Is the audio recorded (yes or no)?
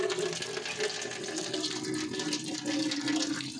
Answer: yes